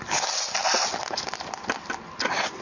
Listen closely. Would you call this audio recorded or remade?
recorded